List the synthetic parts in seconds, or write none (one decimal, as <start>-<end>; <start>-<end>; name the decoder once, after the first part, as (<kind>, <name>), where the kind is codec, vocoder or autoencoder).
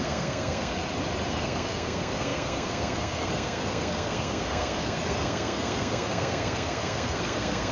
0.0-0.8 (codec, SNAC); 1.3-7.7